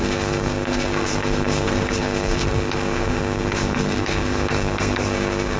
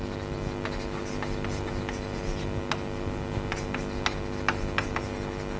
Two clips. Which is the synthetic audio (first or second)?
first